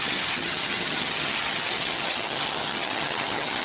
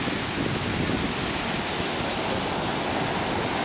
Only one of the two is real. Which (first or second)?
second